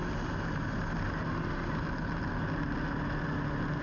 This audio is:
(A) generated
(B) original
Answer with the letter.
B